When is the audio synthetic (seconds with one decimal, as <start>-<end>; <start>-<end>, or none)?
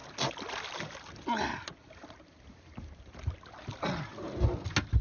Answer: none